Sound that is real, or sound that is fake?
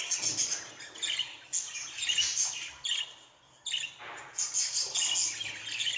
real